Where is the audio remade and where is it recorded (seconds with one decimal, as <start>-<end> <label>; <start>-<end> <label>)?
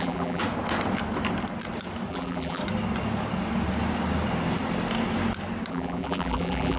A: 0.0-0.4 remade; 0.4-2.1 recorded; 2.1-2.6 remade; 2.6-5.7 recorded; 5.7-6.8 remade